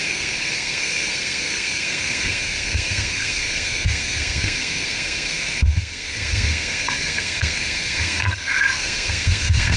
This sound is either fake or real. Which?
fake